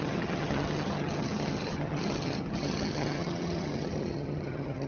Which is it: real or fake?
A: fake